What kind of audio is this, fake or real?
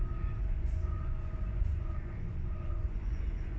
fake